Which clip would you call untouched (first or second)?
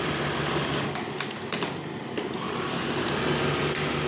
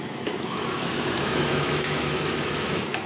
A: first